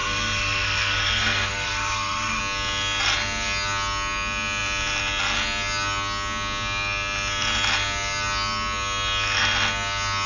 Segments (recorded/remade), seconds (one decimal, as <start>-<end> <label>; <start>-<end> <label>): 0.0-2.4 remade; 2.4-10.3 recorded